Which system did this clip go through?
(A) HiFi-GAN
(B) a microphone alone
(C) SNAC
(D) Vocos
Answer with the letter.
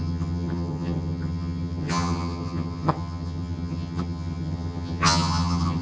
A